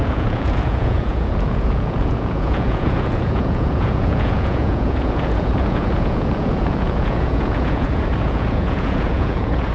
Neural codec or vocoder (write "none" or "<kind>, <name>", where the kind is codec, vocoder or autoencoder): vocoder, Vocos